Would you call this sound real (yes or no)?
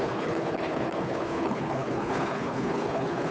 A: no